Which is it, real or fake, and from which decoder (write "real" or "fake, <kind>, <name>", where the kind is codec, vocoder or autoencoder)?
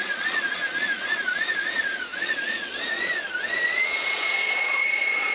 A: fake, vocoder, Vocos